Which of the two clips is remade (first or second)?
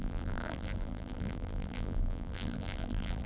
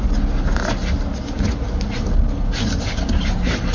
first